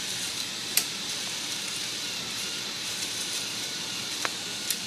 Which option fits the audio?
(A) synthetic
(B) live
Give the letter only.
A